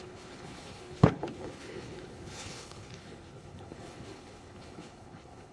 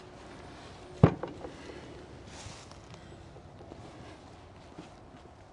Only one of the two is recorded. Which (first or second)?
second